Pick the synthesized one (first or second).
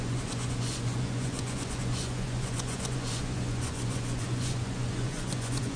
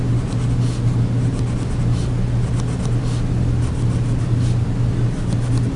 first